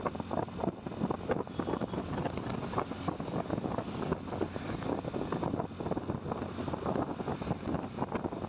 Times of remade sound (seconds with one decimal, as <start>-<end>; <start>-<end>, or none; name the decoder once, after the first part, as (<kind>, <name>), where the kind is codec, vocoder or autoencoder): none

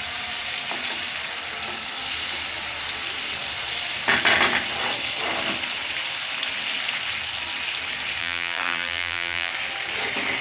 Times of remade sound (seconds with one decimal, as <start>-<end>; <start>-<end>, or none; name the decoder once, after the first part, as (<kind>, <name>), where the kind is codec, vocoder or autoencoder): 8.2-9.5 (vocoder, BigVGAN v2)

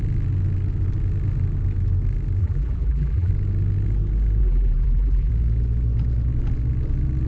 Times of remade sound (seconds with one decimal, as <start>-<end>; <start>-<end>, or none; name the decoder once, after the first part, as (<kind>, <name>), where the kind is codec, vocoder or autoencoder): 2.4-3.3 (vocoder, BigVGAN v2); 4.4-5.3

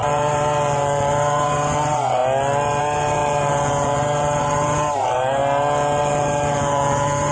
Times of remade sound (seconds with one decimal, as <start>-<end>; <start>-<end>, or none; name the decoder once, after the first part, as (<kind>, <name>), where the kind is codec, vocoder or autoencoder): 0.0-2.2 (vocoder, BigVGAN v2); 2.8-5.4; 6.0-7.3

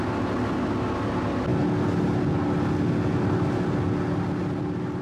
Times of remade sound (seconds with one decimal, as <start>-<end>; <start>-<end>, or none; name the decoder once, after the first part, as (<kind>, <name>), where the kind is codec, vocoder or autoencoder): none

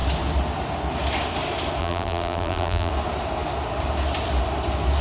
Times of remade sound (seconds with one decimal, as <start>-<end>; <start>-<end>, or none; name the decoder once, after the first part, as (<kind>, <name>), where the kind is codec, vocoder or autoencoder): 1.8-2.9 (vocoder, BigVGAN v2)

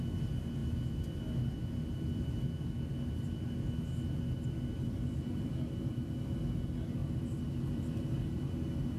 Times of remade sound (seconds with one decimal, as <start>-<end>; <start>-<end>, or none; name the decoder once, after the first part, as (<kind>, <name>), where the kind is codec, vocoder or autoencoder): 4.7-6.5 (vocoder, BigVGAN v2); 7.0-8.0

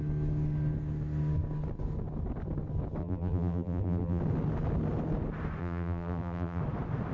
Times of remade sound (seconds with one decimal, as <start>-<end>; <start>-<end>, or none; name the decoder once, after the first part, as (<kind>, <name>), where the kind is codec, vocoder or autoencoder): 3.0-4.2 (vocoder, BigVGAN v2); 5.6-6.6